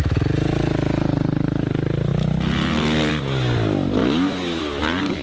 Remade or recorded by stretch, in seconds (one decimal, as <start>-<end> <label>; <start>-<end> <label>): 0.0-4.0 recorded; 4.0-4.6 remade; 4.6-5.2 recorded